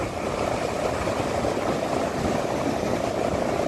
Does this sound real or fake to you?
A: real